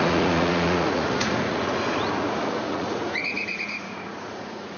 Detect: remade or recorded remade